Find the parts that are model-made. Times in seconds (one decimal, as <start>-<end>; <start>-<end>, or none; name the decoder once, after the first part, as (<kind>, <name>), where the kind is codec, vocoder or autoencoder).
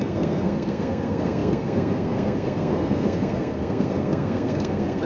0.0-5.1 (codec, SNAC)